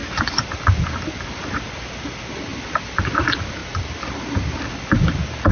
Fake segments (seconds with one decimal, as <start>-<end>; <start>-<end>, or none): 3.6-4.2